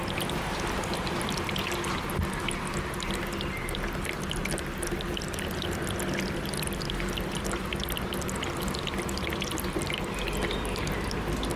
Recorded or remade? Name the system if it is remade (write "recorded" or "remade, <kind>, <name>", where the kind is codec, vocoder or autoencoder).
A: recorded